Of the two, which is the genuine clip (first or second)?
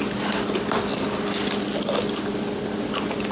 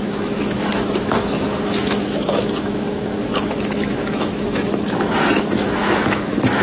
first